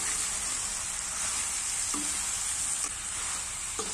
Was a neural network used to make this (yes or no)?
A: no